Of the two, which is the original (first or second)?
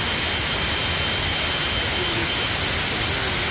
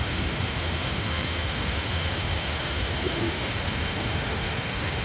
first